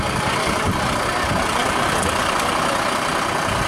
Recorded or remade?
recorded